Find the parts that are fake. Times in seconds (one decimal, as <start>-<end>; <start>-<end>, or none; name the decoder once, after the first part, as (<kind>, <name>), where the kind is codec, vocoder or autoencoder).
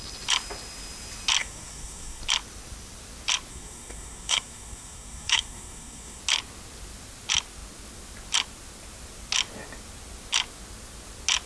1.4-2.2 (codec, SNAC); 3.5-6.2